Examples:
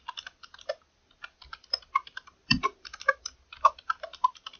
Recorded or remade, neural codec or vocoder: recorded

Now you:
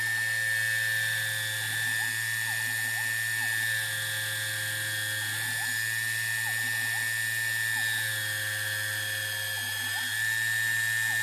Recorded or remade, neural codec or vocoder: recorded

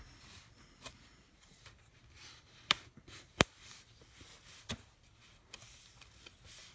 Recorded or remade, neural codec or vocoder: recorded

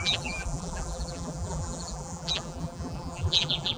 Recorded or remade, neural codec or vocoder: remade, vocoder, BigVGAN v2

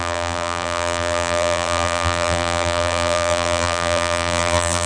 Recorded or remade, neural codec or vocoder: remade, vocoder, BigVGAN v2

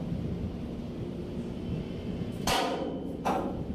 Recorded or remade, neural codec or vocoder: recorded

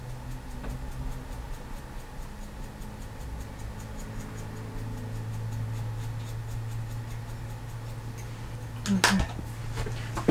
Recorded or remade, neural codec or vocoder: recorded